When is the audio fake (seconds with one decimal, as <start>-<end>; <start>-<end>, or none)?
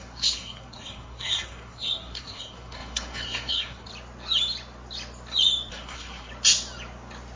0.0-3.9; 5.7-6.3